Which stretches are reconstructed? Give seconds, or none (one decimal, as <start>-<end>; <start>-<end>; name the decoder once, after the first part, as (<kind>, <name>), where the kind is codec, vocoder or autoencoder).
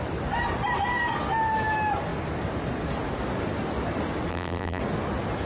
4.3-4.8 (vocoder, BigVGAN v2)